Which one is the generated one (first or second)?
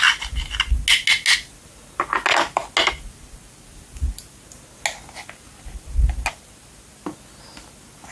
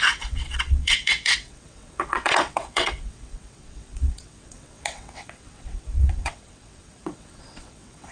second